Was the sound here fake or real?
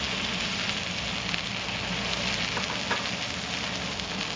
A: real